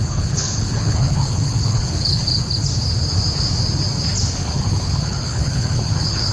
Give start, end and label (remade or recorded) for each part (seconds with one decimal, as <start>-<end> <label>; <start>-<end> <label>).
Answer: 0.0-2.2 remade; 2.2-4.4 recorded; 4.4-6.3 remade